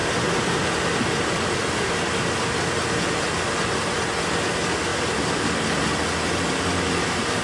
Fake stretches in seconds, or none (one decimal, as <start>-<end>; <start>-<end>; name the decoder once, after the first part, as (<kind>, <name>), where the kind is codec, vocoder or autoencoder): 4.9-5.4 (vocoder, BigVGAN v2)